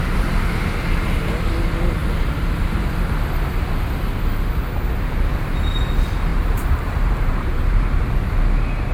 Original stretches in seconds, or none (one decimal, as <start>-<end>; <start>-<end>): 0.0-6.3; 8.3-8.9